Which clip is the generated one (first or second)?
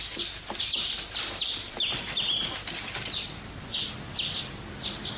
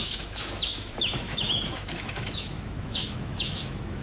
second